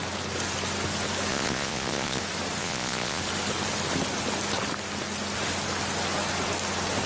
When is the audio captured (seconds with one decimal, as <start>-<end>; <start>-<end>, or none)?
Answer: 0.0-1.3; 2.2-2.6; 3.2-7.1